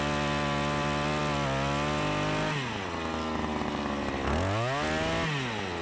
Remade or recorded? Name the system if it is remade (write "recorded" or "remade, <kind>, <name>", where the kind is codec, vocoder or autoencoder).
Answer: recorded